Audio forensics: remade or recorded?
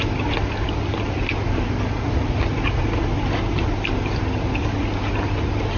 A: recorded